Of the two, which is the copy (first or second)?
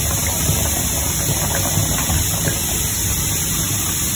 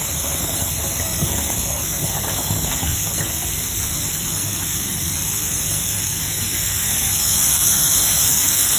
second